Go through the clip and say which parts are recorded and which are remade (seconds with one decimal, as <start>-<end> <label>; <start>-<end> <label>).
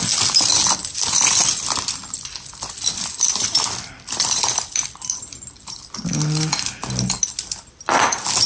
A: 0.0-0.8 recorded; 0.8-5.9 remade; 5.9-8.5 recorded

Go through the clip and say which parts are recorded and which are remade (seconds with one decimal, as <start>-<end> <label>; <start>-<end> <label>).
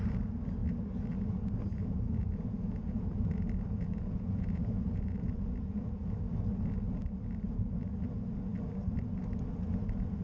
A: 0.0-1.7 recorded; 1.7-6.0 remade; 6.0-10.2 recorded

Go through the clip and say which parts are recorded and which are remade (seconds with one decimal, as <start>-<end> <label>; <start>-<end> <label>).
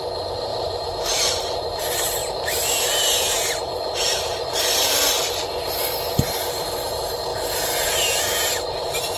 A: 0.0-0.5 recorded; 0.5-1.8 remade; 1.8-2.2 recorded; 2.2-5.1 remade; 5.1-7.3 recorded; 7.3-8.2 remade; 8.2-9.2 recorded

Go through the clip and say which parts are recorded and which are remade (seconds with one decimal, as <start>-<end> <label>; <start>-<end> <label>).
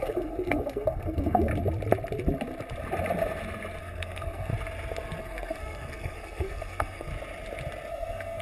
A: 0.0-1.5 remade; 1.5-3.8 recorded; 3.8-4.5 remade; 4.5-5.2 recorded; 5.2-7.1 remade; 7.1-7.9 recorded; 7.9-8.4 remade